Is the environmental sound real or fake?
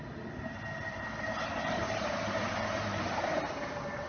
real